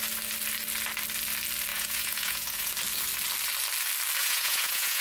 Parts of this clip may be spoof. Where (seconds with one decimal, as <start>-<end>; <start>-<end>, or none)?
1.7-2.7; 4.2-5.0